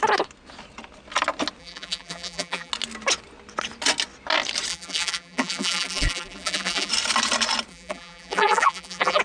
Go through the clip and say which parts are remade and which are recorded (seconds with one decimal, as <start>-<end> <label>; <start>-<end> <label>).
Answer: 0.0-1.6 recorded; 1.6-2.7 remade; 2.7-4.7 recorded; 4.7-6.9 remade; 6.9-7.7 recorded; 7.7-9.2 remade